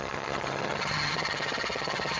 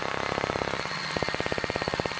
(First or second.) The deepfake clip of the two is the first